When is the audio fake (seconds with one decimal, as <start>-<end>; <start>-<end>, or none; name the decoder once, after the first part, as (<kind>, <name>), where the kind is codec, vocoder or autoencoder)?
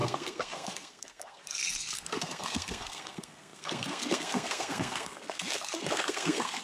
0.0-6.6 (codec, SNAC)